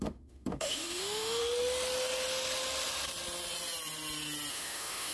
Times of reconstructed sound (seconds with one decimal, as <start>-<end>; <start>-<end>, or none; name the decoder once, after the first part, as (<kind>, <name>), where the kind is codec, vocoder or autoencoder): 0.0-1.4 (autoencoder, DAC-VAE); 4.5-5.1